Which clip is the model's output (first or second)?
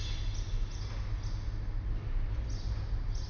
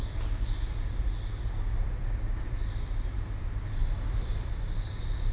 second